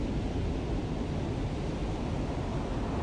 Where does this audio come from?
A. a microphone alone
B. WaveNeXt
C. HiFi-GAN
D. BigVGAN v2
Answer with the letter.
A